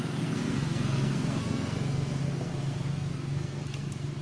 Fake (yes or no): yes